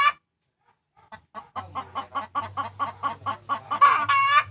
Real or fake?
real